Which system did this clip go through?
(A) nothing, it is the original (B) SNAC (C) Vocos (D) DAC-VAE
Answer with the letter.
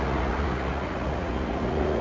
C